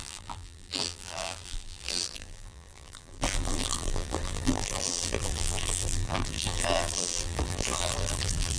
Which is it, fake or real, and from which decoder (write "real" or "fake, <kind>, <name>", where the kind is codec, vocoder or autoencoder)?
fake, vocoder, BigVGAN v2